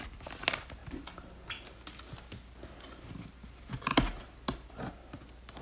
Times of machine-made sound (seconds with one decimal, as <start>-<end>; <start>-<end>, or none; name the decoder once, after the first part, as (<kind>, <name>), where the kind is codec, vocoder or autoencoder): none